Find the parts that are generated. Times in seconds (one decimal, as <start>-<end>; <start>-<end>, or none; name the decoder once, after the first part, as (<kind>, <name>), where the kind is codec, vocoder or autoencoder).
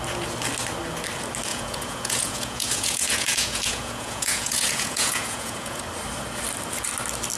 1.5-5.8 (vocoder, Vocos)